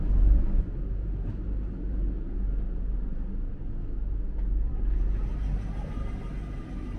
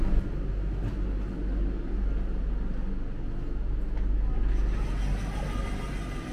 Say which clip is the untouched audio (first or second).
second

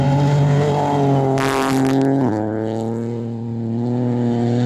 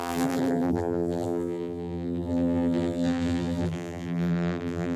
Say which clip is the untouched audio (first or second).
first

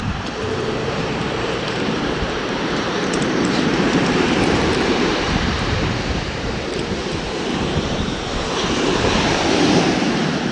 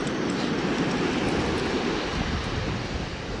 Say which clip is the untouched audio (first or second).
second